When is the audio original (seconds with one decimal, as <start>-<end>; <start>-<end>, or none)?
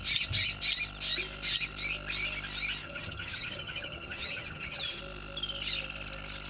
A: 0.0-2.8; 5.0-6.5